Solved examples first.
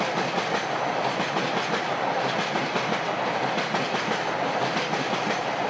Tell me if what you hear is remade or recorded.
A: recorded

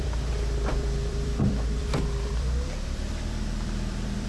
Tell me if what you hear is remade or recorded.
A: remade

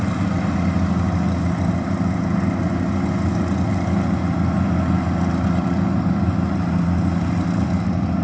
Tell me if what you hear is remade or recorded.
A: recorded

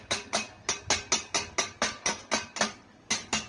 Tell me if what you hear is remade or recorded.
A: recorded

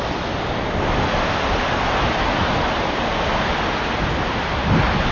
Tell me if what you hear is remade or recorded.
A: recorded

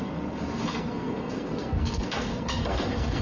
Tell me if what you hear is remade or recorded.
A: remade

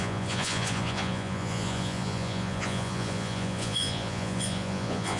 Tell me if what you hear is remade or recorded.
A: remade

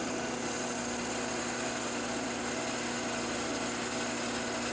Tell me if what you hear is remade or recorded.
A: recorded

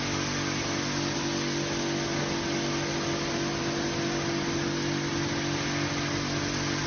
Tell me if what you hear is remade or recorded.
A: recorded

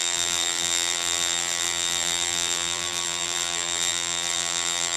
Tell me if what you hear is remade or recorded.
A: remade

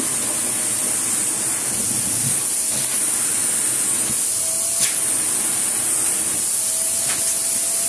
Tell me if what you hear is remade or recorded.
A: recorded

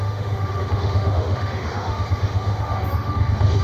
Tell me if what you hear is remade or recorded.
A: remade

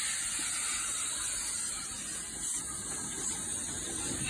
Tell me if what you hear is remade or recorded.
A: recorded